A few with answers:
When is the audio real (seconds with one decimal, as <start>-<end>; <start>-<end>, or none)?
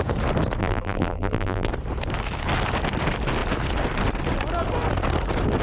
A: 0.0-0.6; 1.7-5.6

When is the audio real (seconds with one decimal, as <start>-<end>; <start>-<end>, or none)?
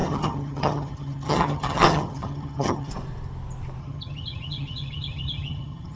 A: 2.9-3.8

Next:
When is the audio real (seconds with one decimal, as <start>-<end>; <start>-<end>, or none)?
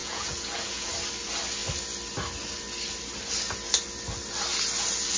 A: 0.9-5.2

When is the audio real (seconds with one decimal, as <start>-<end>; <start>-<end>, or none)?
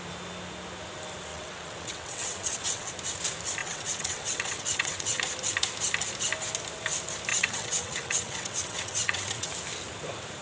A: 0.0-1.3; 2.9-3.6; 5.2-7.3; 9.5-10.4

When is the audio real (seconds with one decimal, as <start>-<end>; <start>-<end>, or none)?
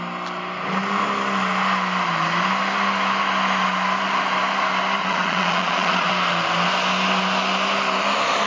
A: 0.0-5.0; 6.1-8.5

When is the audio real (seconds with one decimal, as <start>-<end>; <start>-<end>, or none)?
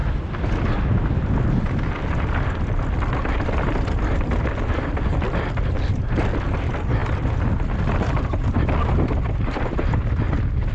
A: 0.0-10.7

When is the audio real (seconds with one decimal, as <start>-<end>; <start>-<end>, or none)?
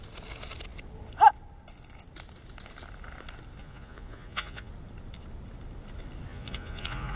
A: 0.0-3.6; 4.7-6.3